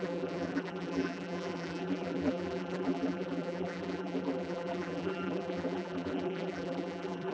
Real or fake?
fake